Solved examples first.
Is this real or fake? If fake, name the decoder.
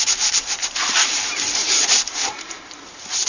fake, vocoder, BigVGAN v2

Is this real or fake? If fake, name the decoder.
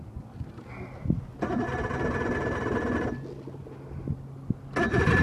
real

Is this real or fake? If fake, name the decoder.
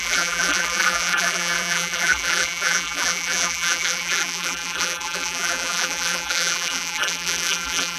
fake, vocoder, BigVGAN v2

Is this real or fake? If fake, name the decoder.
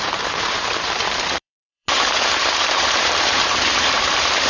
fake, vocoder, BigVGAN v2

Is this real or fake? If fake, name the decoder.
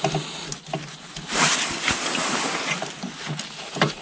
real